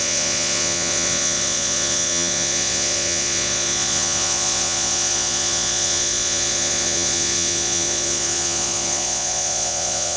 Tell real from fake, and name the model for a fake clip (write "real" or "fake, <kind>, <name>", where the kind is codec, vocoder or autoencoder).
fake, vocoder, Vocos